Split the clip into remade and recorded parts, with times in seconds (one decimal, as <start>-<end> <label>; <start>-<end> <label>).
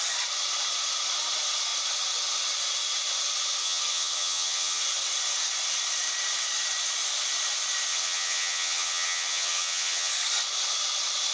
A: 0.0-3.6 recorded; 3.6-4.8 remade; 4.8-7.9 recorded; 7.9-10.1 remade; 10.1-11.3 recorded